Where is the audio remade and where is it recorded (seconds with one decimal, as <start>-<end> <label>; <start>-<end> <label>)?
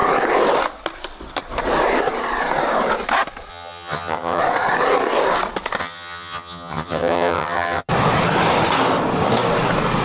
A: 0.0-3.5 recorded; 3.5-4.4 remade; 4.4-5.8 recorded; 5.8-7.9 remade; 7.9-10.0 recorded